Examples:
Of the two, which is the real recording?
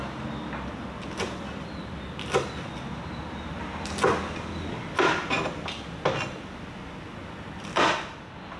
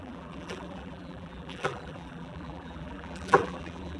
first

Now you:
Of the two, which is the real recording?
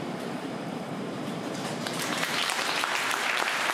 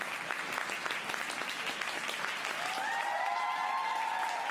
second